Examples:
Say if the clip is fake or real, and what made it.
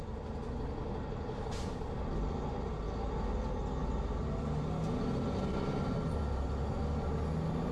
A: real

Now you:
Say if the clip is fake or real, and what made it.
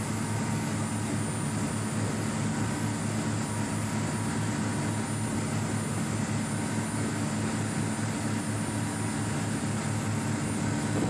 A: real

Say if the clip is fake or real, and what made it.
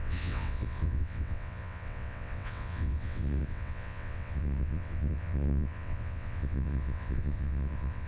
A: fake, vocoder, WaveNeXt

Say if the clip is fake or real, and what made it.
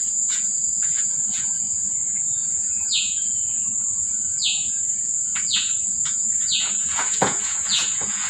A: fake, vocoder, Vocos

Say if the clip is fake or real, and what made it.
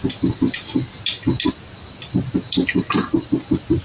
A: real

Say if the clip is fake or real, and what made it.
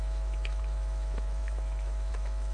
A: fake, autoencoder, DAC-VAE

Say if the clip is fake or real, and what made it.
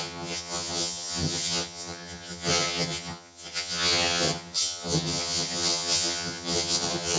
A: fake, vocoder, HiFi-GAN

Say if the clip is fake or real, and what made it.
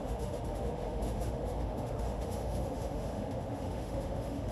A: fake, autoencoder, DAC-VAE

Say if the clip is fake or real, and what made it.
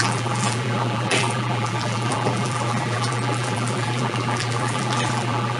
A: fake, vocoder, BigVGAN v2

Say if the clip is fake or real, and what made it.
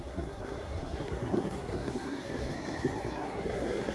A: fake, codec, SNAC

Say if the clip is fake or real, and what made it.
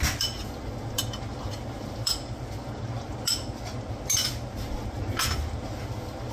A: real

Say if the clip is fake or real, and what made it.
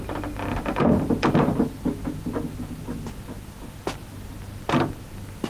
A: real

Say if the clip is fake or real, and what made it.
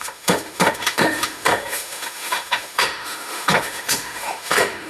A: fake, autoencoder, DAC-VAE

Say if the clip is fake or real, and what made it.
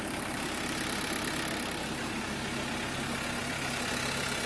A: real